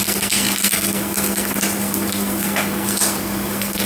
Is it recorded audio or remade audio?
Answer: remade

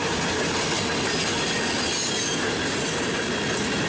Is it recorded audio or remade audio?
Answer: recorded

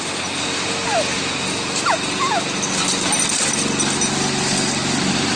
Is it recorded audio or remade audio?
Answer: recorded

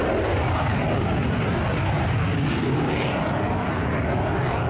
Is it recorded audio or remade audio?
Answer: recorded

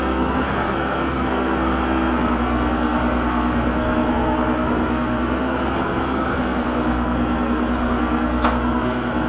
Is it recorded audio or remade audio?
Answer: remade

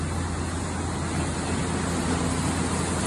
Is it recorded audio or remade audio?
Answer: recorded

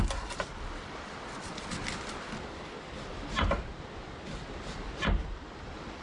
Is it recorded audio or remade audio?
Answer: remade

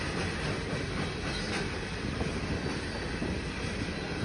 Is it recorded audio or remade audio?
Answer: recorded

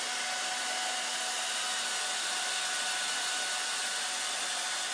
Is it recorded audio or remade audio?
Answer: recorded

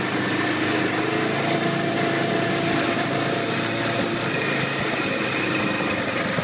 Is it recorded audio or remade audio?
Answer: recorded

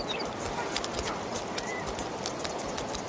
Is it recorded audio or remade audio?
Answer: recorded